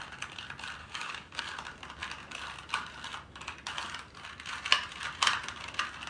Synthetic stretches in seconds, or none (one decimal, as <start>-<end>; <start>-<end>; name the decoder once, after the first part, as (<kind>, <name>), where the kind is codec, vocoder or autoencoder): 0.8-1.4 (codec, DAC)